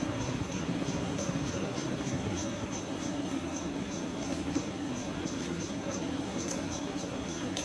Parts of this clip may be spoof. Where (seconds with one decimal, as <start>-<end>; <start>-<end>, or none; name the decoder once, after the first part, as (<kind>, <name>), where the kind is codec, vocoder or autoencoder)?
0.0-7.6 (codec, SNAC)